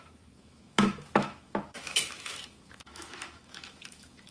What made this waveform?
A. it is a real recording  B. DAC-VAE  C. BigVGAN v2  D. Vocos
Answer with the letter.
B